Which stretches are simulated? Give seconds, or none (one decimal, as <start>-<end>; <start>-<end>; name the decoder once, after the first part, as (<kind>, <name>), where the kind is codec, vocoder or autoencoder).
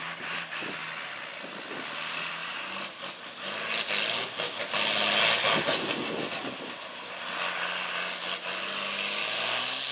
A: none